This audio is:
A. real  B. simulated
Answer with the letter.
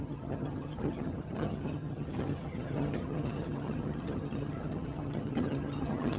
B